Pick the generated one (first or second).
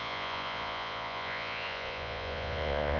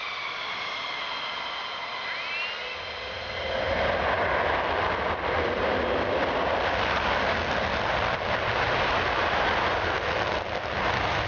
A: first